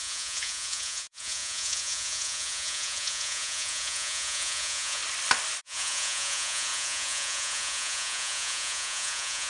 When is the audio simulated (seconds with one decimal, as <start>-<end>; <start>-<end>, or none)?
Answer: 0.0-5.0; 5.6-9.5